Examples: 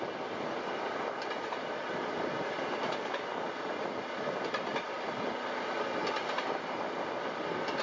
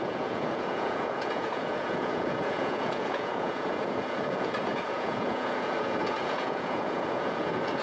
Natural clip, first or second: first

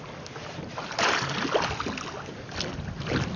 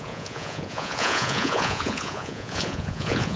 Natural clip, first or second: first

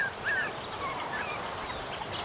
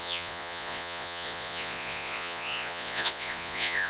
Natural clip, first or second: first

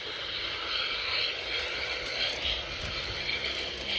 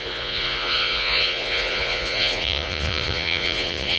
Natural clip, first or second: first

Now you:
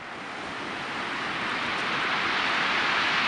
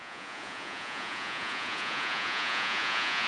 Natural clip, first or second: first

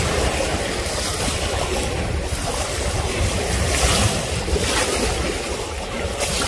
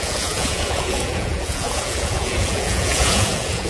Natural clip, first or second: first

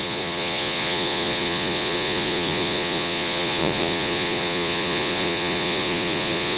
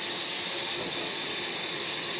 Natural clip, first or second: second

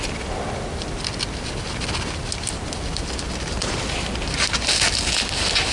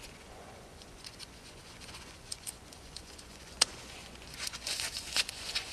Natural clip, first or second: first